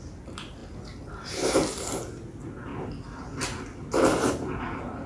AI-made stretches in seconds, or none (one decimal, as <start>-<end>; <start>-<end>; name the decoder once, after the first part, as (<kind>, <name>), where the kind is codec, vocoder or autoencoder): none